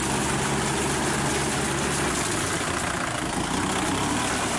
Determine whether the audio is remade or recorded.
recorded